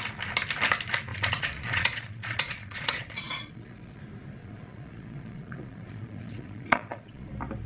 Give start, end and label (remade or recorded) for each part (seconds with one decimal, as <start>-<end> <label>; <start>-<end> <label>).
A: 0.0-1.1 recorded; 1.1-4.0 remade; 4.0-4.4 recorded; 4.4-7.3 remade; 7.3-7.7 recorded